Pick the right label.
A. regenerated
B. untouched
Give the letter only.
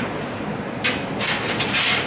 B